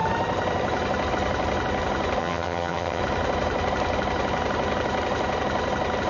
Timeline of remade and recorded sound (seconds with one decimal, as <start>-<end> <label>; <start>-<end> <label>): 0.0-2.2 recorded; 2.2-3.0 remade; 3.0-6.1 recorded